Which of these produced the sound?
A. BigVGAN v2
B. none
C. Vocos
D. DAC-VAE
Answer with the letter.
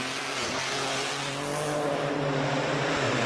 B